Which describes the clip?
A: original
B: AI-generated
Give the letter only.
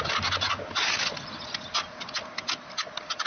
A